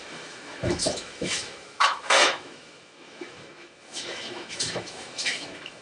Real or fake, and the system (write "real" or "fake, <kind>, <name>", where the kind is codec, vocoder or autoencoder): fake, autoencoder, DAC-VAE